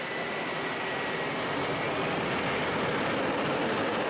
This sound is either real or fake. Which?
real